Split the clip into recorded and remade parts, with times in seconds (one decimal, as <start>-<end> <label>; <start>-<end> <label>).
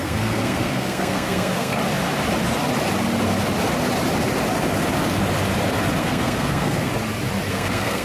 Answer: 0.0-1.8 remade; 1.8-6.0 recorded; 6.0-6.9 remade; 6.9-7.5 recorded; 7.5-8.0 remade